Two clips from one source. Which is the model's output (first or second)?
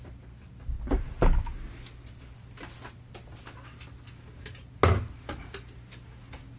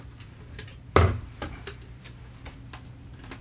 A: second